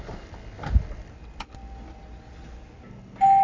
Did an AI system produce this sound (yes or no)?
no